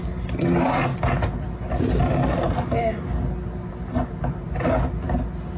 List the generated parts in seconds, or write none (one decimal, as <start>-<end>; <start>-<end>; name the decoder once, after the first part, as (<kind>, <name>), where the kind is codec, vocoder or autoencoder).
none